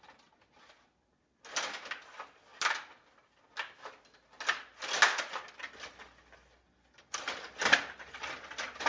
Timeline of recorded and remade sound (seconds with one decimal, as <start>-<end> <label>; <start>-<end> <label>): 0.0-8.9 recorded

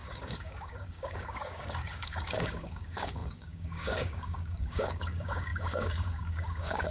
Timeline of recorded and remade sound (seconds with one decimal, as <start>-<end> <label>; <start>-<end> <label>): 0.0-6.9 remade

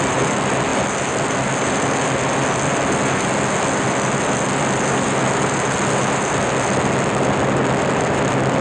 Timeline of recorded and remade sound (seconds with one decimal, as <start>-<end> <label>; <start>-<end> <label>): 0.0-8.6 recorded

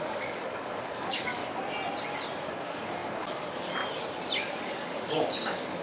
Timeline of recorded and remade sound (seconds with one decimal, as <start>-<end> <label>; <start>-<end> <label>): 0.0-1.4 remade; 1.4-2.5 recorded; 2.5-3.8 remade; 3.8-4.4 recorded; 4.4-5.8 remade

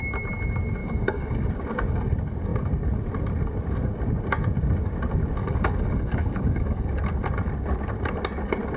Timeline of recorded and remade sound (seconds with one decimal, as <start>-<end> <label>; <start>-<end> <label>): 0.0-0.8 recorded; 0.8-1.5 remade; 1.5-5.4 recorded; 5.4-6.9 remade; 6.9-8.8 recorded

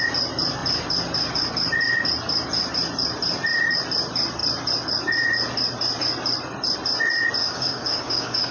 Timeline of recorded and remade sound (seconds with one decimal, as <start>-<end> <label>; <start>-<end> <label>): 0.0-7.4 recorded; 7.4-8.5 remade